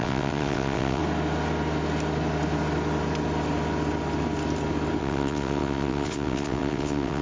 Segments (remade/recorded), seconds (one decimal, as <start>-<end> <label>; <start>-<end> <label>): 0.0-1.0 remade; 1.0-5.0 recorded; 5.0-7.2 remade

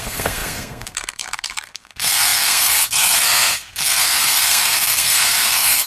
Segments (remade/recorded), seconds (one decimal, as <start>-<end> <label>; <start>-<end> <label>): 0.0-5.9 remade

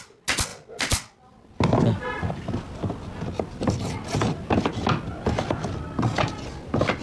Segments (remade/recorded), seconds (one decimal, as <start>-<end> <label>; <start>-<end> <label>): 0.0-7.0 recorded

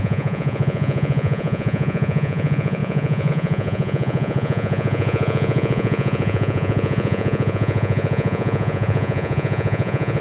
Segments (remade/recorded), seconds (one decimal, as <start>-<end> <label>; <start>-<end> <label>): 0.0-10.2 remade